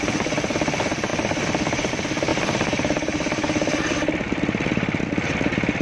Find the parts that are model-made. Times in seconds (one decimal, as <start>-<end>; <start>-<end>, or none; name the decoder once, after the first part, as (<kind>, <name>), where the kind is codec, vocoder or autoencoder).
1.1-1.9 (vocoder, BigVGAN v2); 2.3-5.0